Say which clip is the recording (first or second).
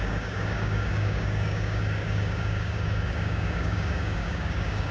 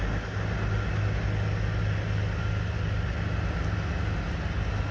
second